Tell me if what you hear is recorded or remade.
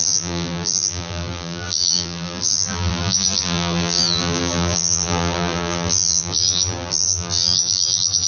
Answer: remade